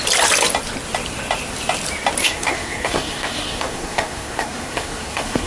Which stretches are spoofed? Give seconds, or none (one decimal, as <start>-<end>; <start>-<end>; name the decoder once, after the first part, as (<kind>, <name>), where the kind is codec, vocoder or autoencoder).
2.2-5.5 (codec, SNAC)

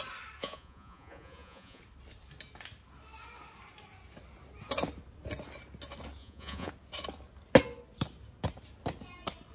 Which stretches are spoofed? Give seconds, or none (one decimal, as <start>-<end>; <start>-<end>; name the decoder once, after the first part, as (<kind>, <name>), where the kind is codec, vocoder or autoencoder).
0.4-1.8 (vocoder, Vocos); 6.2-6.7

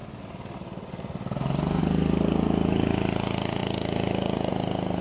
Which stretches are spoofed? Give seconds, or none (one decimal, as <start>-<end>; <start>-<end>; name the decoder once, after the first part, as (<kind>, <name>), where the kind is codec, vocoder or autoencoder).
none

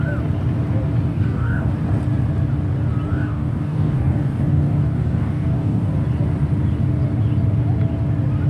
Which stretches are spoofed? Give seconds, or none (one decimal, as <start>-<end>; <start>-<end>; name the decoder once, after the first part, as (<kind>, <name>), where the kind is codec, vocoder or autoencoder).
1.1-1.7 (codec, DAC); 3.1-5.9

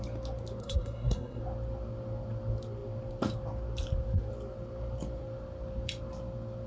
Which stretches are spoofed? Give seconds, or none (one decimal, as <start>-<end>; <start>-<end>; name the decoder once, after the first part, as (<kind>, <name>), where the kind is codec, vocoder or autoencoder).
0.6-1.4 (codec, SNAC)

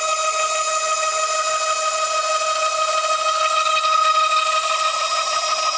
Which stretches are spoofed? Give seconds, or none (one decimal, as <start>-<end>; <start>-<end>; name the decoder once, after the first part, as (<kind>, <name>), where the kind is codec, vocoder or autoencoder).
4.6-5.8 (vocoder, BigVGAN v2)

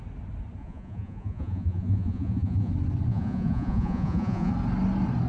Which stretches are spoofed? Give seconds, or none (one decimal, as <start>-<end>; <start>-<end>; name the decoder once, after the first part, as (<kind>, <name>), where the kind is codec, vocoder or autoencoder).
0.6-2.7 (vocoder, Vocos); 3.1-4.5